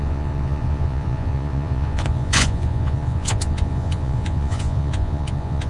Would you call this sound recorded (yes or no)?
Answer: no